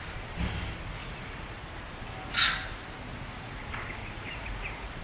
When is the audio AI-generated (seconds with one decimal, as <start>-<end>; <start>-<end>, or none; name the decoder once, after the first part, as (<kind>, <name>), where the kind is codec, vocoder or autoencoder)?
1.0-1.6 (vocoder, Vocos); 3.1-3.6; 4.0-5.0